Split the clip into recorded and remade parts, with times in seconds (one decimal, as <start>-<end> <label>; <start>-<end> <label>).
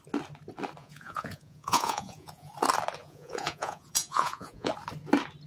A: 0.0-0.8 recorded; 0.8-2.5 remade; 2.5-3.0 recorded; 3.0-4.7 remade; 4.7-5.5 recorded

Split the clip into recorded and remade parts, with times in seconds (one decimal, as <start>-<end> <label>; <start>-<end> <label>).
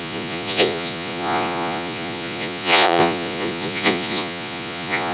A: 0.0-5.1 remade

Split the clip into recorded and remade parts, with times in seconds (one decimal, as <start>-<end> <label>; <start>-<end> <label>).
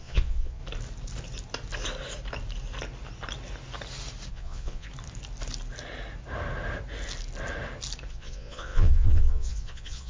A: 0.0-0.6 remade; 0.6-4.3 recorded; 4.3-4.9 remade; 4.9-8.1 recorded; 8.1-10.1 remade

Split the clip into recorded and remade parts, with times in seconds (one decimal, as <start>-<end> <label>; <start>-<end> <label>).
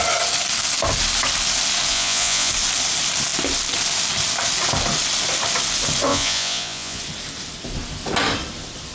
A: 0.0-1.9 recorded; 1.9-2.5 remade; 2.5-6.1 recorded; 6.1-7.0 remade; 7.0-8.9 recorded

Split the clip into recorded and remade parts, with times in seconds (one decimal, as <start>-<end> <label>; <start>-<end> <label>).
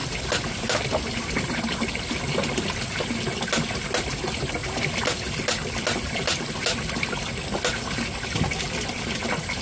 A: 0.0-9.6 recorded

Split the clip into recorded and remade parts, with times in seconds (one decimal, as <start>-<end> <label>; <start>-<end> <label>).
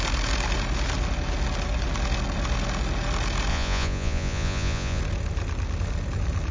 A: 0.0-3.5 recorded; 3.5-5.0 remade; 5.0-6.5 recorded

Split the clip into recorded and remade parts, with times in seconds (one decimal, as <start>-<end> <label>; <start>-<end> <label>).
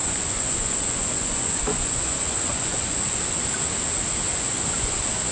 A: 0.0-3.2 remade; 3.2-4.3 recorded; 4.3-5.3 remade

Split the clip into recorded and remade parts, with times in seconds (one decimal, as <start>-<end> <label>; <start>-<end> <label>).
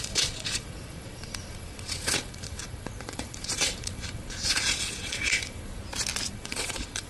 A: 0.0-5.8 remade; 5.8-6.3 recorded; 6.3-7.1 remade